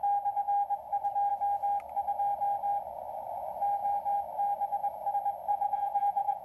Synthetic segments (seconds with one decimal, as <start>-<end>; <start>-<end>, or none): 5.5-6.4